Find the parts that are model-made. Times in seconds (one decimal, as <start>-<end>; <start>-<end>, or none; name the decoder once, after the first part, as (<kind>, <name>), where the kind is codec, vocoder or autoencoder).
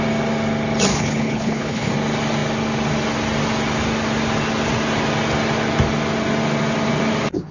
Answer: 0.9-1.9 (codec, HILCodec)